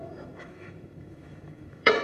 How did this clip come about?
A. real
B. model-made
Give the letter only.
B